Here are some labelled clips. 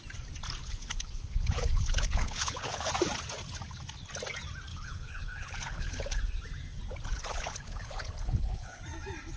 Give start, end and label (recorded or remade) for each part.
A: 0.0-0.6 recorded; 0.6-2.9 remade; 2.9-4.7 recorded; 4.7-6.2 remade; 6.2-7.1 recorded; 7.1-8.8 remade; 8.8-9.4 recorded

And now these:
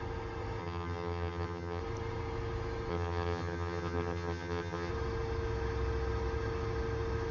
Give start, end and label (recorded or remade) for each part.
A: 0.0-0.6 recorded; 0.6-1.8 remade; 1.8-2.9 recorded; 2.9-4.9 remade; 4.9-7.3 recorded

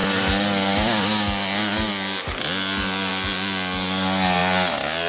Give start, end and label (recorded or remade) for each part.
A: 0.0-5.1 recorded

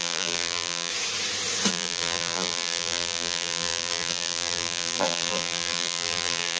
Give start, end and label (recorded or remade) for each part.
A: 0.0-0.9 remade; 0.9-1.7 recorded; 1.7-6.6 remade

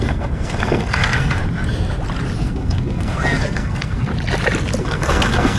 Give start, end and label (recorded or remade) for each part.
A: 0.0-1.4 remade; 1.4-2.4 recorded; 2.4-4.1 remade; 4.1-4.8 recorded; 4.8-5.6 remade

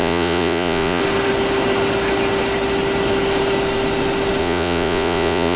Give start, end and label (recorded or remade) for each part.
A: 0.0-1.0 remade; 1.0-4.4 recorded; 4.4-5.6 remade

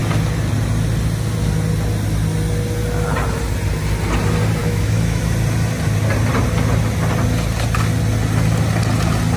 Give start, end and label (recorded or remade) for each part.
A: 0.0-4.6 recorded; 4.6-5.2 remade; 5.2-9.4 recorded

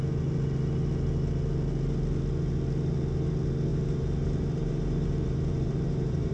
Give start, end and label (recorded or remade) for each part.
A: 0.0-3.7 recorded; 3.7-6.3 remade